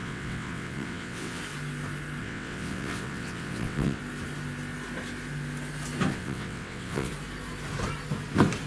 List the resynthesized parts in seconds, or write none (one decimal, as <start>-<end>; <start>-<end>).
0.0-1.4; 2.2-4.0; 6.1-7.1